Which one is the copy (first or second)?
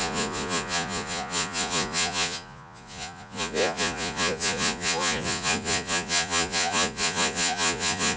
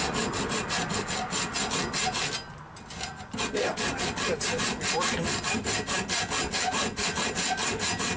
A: first